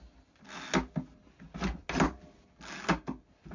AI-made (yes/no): no